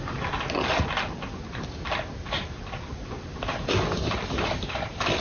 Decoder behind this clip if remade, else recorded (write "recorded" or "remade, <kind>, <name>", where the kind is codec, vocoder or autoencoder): recorded